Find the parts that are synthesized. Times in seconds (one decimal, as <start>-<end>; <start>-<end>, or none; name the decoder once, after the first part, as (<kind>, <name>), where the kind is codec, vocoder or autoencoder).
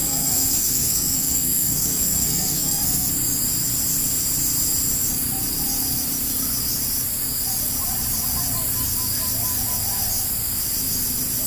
0.0-3.1 (codec, SNAC)